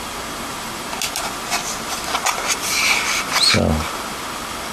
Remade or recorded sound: recorded